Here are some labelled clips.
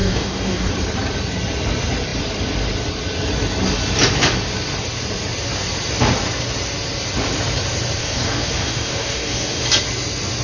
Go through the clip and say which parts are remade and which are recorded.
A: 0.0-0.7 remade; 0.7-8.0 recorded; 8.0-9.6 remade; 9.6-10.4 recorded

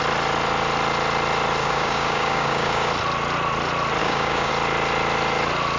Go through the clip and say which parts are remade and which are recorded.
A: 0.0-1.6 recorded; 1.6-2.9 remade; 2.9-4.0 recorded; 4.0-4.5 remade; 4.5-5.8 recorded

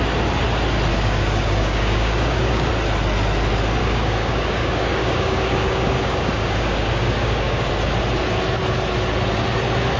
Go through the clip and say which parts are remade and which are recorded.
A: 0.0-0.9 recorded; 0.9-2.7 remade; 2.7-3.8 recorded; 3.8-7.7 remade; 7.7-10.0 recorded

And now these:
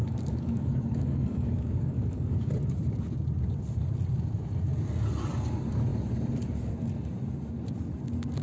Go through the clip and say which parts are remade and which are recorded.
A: 0.0-2.5 remade; 2.5-8.4 recorded

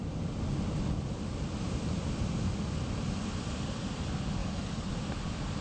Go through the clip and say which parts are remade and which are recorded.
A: 0.0-4.4 recorded; 4.4-4.9 remade; 4.9-5.6 recorded

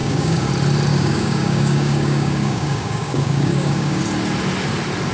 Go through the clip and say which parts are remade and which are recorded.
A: 0.0-0.5 remade; 0.5-0.9 recorded; 0.9-4.0 remade; 4.0-5.1 recorded

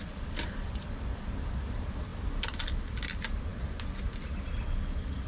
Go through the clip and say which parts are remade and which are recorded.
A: 0.0-5.3 recorded

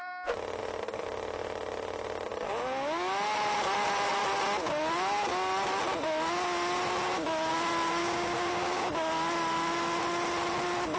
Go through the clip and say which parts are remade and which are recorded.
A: 0.0-8.0 recorded; 8.0-8.9 remade; 8.9-11.0 recorded